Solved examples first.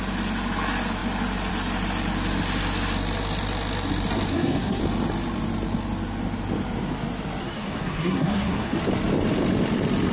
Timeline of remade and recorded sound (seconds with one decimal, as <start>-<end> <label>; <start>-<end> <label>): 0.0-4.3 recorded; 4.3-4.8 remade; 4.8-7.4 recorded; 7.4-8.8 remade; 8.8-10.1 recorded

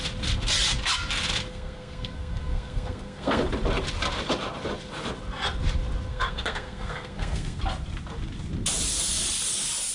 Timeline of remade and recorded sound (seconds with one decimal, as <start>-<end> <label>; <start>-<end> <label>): 0.0-1.5 recorded; 1.5-3.4 remade; 3.4-6.1 recorded; 6.1-7.6 remade; 7.6-9.9 recorded

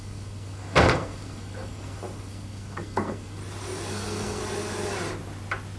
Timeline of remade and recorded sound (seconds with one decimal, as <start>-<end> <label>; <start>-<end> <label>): 0.0-3.4 remade; 3.4-3.9 recorded; 3.9-4.4 remade; 4.4-5.8 recorded

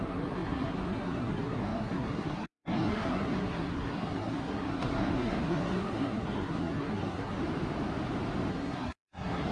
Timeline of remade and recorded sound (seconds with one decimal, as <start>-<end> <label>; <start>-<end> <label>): 0.0-7.4 remade; 7.4-8.5 recorded; 8.5-9.5 remade